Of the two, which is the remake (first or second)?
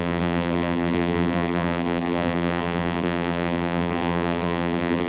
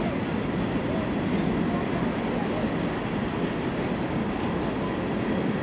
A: first